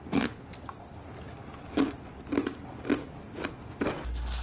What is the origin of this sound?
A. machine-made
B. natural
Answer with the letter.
B